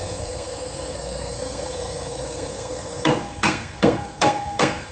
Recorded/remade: remade